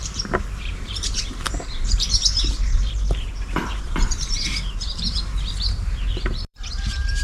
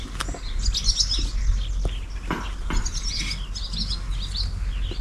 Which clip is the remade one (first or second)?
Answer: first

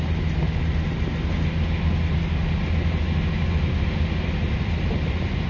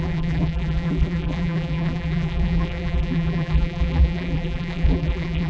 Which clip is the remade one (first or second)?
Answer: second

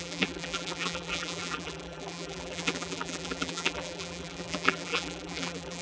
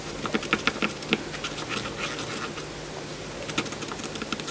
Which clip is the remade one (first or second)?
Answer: first